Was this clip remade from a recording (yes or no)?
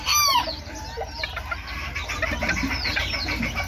no